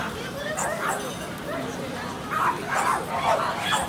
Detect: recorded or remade recorded